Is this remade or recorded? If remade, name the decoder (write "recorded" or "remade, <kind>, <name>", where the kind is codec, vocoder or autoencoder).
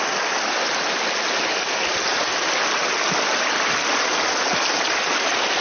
recorded